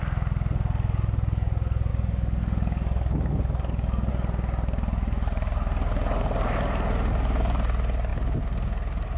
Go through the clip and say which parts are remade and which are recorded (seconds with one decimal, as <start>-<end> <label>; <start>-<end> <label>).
0.0-1.9 recorded; 1.9-4.1 remade; 4.1-9.2 recorded